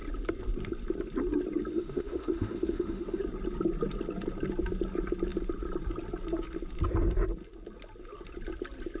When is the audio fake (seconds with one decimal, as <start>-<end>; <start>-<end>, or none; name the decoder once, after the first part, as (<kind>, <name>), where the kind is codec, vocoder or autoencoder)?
1.7-3.2 (autoencoder, DAC-VAE)